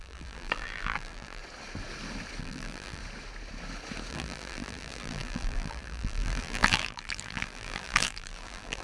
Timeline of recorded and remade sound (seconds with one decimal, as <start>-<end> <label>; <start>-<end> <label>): 0.0-1.4 remade; 1.4-2.4 recorded; 2.4-3.0 remade; 3.0-4.1 recorded; 4.1-8.8 remade